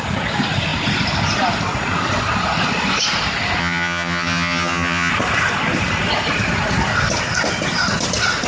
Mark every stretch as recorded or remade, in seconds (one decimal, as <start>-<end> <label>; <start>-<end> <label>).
0.0-3.6 recorded; 3.6-5.1 remade; 5.1-8.5 recorded